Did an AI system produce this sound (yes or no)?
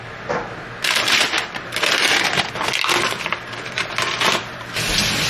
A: no